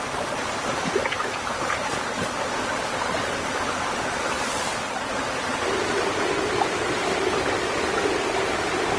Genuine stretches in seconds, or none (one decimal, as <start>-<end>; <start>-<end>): 0.0-9.0